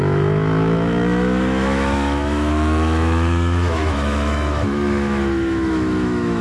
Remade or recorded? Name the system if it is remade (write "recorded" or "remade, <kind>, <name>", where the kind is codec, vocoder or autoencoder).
remade, autoencoder, DAC-VAE